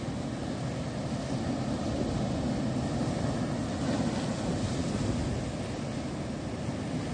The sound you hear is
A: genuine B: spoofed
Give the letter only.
A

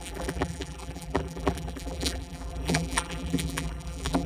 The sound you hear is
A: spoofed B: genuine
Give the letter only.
A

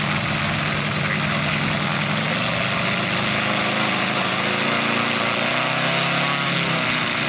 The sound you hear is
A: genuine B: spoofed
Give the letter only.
A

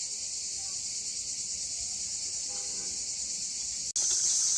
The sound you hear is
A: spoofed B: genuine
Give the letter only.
B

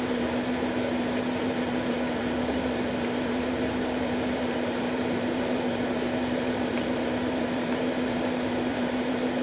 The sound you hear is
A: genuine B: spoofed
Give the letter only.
B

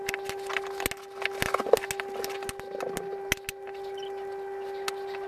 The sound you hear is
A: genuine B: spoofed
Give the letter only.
A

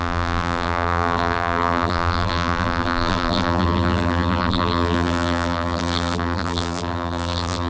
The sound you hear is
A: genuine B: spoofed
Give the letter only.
B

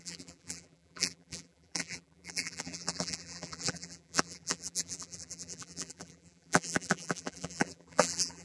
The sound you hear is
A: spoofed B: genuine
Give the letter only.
A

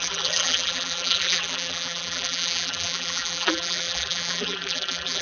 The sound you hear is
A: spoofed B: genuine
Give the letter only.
A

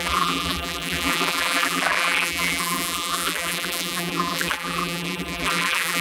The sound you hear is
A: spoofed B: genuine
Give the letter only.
A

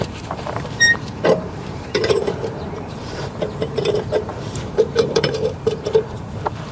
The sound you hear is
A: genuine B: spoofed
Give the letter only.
B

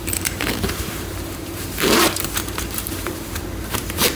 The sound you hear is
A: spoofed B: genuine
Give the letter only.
A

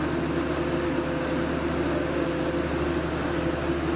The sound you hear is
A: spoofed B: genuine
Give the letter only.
B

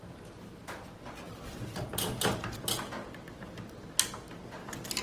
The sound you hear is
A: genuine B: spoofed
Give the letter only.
A